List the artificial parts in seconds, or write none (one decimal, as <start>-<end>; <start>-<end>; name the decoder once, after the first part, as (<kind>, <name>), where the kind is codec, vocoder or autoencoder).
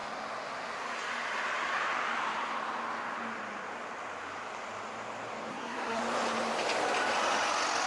5.5-6.0 (codec, SNAC)